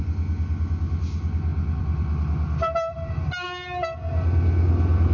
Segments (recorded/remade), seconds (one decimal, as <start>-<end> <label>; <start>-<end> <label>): 0.0-1.5 recorded; 1.5-3.1 remade; 3.1-5.1 recorded